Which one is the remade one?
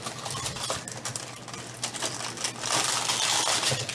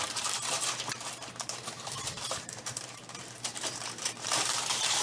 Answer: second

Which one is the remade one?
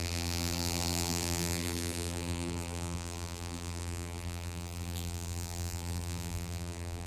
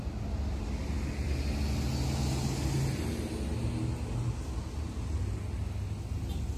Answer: first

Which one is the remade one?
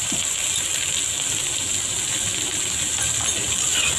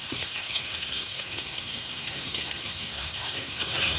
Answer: second